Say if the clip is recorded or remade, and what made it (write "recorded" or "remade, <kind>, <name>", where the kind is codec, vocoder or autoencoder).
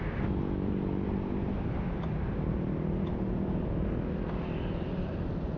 recorded